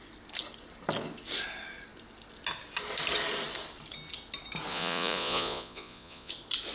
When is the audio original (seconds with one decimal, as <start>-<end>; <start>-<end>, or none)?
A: 0.0-4.7; 6.3-6.7